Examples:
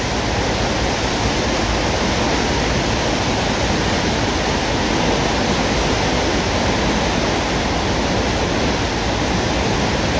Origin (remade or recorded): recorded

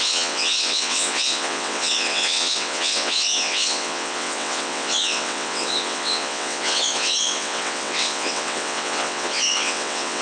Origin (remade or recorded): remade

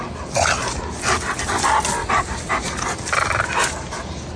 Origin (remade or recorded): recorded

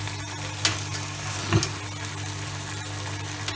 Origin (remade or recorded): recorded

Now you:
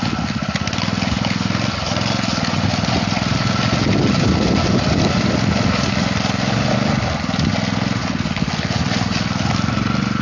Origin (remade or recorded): recorded